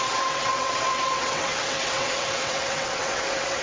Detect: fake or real fake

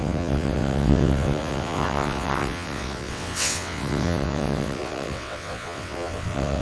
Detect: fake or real fake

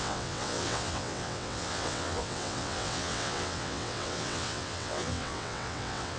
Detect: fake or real fake